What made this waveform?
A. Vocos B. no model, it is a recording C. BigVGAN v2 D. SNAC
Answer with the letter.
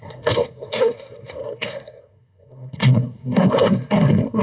D